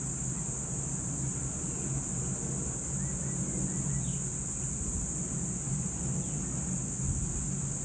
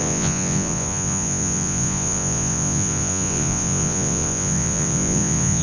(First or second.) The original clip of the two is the first